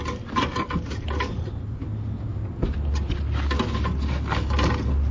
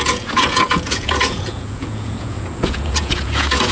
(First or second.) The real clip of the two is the first